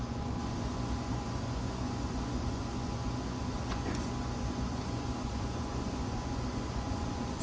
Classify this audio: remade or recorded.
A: remade